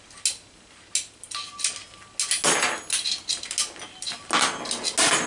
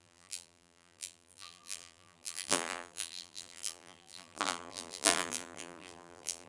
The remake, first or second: second